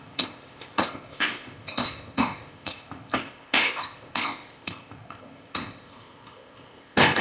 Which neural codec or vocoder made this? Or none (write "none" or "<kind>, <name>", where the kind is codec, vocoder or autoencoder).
codec, ZipCodec